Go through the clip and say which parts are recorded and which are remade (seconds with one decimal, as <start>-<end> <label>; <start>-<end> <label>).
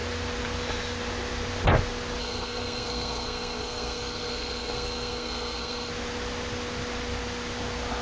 0.0-2.2 recorded; 2.2-5.9 remade; 5.9-8.0 recorded